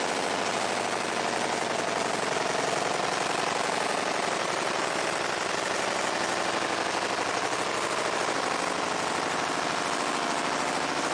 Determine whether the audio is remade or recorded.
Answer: recorded